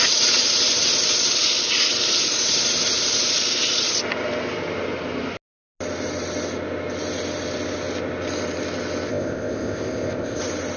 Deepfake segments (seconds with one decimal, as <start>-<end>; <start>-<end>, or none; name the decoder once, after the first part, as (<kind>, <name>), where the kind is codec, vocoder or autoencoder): 9.1-10.4 (codec, ZipCodec)